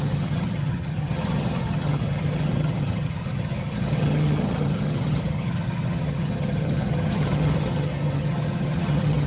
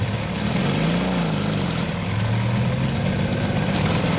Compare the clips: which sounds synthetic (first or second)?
first